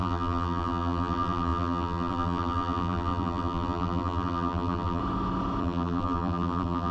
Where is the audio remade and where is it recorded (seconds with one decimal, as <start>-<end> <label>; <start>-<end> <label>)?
0.0-5.0 remade; 5.0-5.6 recorded; 5.6-6.9 remade

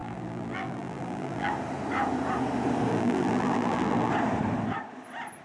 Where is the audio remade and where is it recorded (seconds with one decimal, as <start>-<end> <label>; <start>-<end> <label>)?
0.0-1.5 remade; 1.5-2.9 recorded; 2.9-4.1 remade; 4.1-5.4 recorded

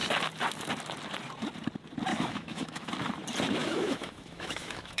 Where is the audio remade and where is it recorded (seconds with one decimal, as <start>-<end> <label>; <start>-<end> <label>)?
0.0-2.1 recorded; 2.1-2.9 remade; 2.9-3.6 recorded; 3.6-5.0 remade

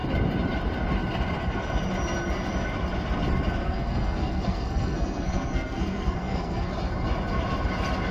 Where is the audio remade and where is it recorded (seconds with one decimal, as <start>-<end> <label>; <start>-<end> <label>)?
0.0-3.6 recorded; 3.6-6.7 remade; 6.7-8.1 recorded